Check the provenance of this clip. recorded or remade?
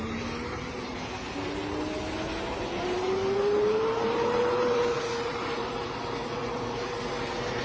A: recorded